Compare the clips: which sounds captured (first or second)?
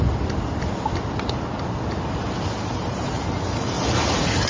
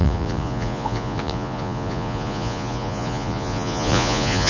first